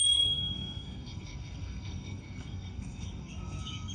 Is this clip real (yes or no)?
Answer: no